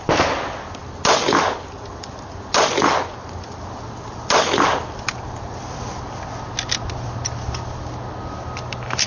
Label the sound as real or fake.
real